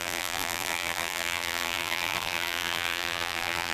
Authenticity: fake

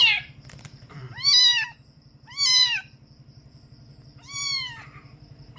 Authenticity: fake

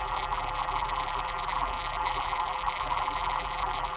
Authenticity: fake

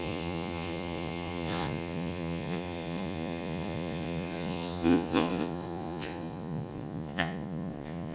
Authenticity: fake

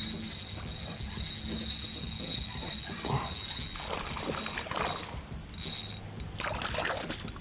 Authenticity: real